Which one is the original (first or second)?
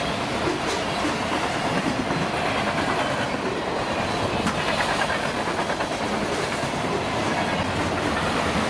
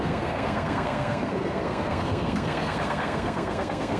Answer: first